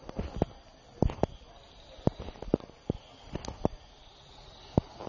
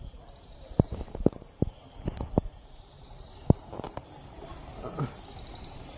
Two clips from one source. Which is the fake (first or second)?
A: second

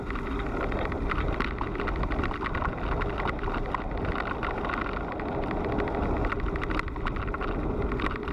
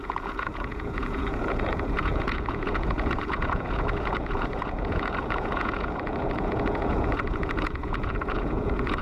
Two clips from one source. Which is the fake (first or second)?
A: second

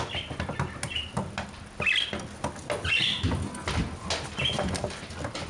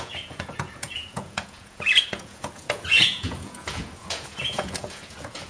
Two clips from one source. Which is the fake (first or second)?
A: second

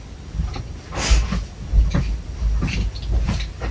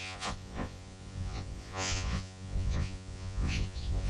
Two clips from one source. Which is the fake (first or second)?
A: second